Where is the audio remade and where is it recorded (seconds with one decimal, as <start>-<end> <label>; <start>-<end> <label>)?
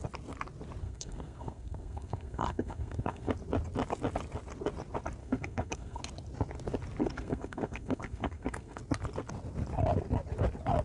0.0-0.8 recorded; 0.8-3.3 remade; 3.3-5.2 recorded; 5.2-6.0 remade; 6.0-7.0 recorded; 7.0-8.8 remade; 8.8-10.8 recorded